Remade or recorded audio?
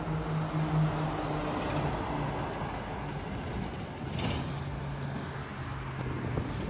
recorded